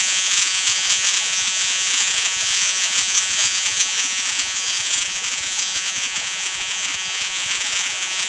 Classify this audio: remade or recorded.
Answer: remade